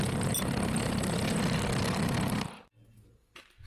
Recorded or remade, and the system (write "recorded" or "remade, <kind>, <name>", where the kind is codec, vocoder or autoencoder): recorded